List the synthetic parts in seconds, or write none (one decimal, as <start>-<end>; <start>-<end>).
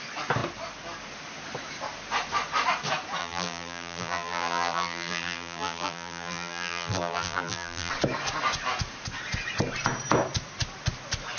3.2-7.9